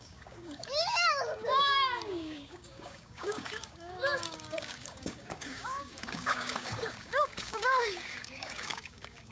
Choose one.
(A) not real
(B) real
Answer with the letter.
A